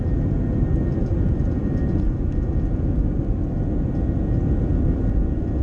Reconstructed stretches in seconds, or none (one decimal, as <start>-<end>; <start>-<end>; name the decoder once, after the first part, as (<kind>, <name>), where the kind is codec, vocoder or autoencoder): none